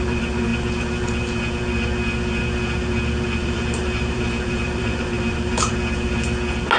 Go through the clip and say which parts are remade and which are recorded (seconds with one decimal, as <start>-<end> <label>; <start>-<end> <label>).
0.0-3.4 recorded; 3.4-5.7 remade; 5.7-6.8 recorded